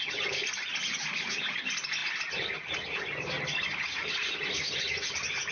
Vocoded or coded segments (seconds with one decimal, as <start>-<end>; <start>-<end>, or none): none